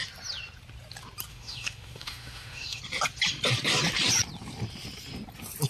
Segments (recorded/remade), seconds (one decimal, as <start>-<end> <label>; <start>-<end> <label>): 0.0-1.3 recorded; 1.3-2.8 remade; 2.8-5.7 recorded